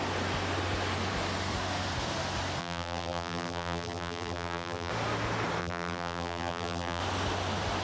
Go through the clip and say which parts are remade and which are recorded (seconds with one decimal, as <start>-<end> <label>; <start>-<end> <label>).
0.0-2.6 recorded; 2.6-4.9 remade; 4.9-5.6 recorded; 5.6-7.0 remade; 7.0-7.8 recorded